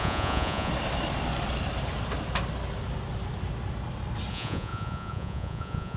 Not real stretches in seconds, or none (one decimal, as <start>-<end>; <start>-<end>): 0.0-0.7; 4.3-6.0